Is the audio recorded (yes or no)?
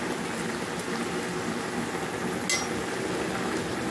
yes